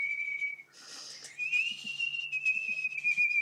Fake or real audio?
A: real